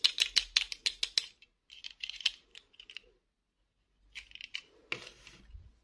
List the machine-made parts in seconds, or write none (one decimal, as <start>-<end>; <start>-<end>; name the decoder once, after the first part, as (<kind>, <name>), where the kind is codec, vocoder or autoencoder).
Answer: none